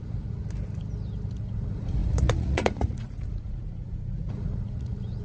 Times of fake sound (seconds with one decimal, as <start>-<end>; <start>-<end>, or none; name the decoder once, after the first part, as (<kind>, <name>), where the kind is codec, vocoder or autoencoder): 0.0-0.4 (vocoder, Vocos); 1.3-5.2